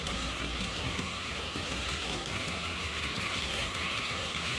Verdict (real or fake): fake